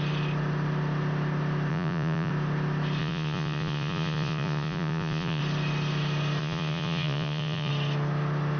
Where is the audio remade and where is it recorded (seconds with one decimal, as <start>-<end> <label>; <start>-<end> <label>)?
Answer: 0.0-1.7 recorded; 1.7-2.3 remade; 2.3-3.0 recorded; 3.0-5.4 remade; 5.4-6.4 recorded; 6.4-7.7 remade; 7.7-8.6 recorded